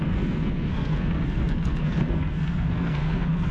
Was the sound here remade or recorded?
remade